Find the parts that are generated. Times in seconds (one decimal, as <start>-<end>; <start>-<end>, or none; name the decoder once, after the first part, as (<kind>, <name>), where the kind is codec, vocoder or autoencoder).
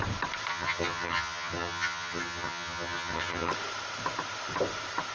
0.5-3.5 (vocoder, HiFi-GAN)